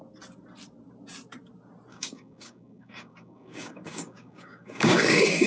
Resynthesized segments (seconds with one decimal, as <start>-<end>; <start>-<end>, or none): 1.9-5.5